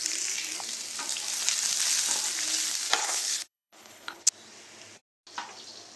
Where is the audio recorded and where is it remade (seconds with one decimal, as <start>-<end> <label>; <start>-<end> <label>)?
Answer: 0.0-3.0 recorded; 3.0-4.2 remade; 4.2-6.0 recorded